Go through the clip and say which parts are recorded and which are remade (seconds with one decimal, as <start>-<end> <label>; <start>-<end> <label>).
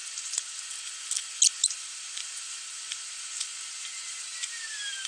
0.0-0.6 remade; 0.6-1.6 recorded; 1.6-5.1 remade